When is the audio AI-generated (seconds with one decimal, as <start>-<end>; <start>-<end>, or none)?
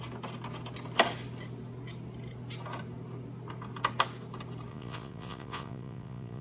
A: 4.7-6.4